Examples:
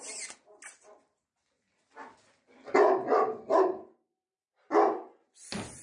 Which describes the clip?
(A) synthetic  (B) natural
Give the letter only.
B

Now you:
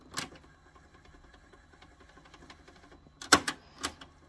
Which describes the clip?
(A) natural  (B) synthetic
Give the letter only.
A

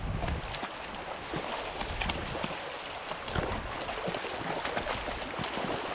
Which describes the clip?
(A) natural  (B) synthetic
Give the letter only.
A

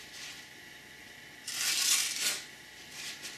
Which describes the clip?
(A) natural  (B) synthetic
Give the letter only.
A